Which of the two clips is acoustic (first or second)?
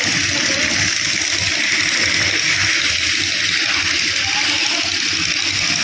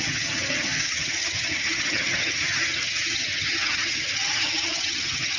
first